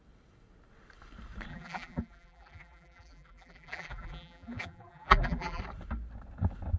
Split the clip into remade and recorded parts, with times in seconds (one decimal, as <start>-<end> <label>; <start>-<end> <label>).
0.0-1.5 recorded; 1.5-5.6 remade; 5.6-6.8 recorded